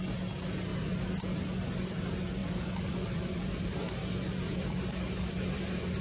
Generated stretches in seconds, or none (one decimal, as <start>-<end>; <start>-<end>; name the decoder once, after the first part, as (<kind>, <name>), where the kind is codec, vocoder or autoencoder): 0.7-1.2 (vocoder, BigVGAN v2); 2.4-6.0